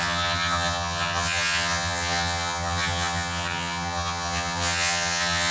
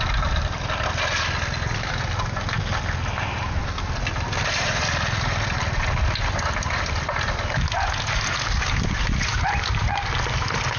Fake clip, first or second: first